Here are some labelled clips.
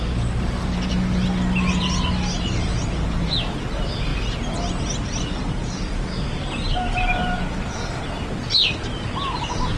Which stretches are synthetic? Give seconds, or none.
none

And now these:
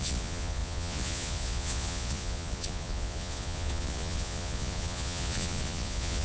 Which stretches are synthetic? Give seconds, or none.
0.0-6.2 (vocoder, Vocos)

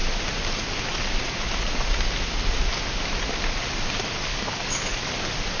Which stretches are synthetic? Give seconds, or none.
4.3-5.0 (codec, DAC)

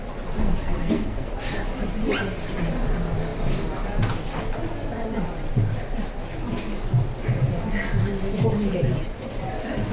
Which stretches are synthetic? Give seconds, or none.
0.4-1.3 (codec, SNAC)

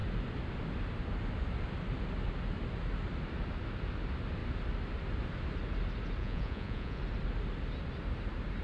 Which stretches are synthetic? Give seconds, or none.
6.2-7.0 (vocoder, Vocos)

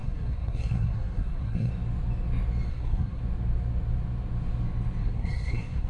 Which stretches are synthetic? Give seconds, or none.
0.0-1.7 (codec, SNAC); 2.7-3.2; 5.0-5.9